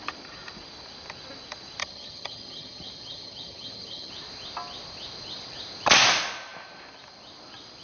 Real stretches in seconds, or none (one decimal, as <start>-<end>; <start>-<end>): 0.0-1.8; 4.1-7.8